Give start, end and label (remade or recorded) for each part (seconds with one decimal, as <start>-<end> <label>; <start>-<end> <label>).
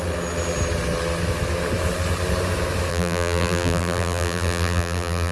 0.0-2.9 recorded; 2.9-5.3 remade